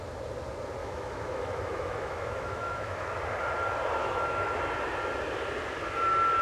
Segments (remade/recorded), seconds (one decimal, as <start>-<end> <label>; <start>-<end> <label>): 0.0-0.8 recorded; 0.8-3.1 remade; 3.1-4.0 recorded; 4.0-4.6 remade; 4.6-6.4 recorded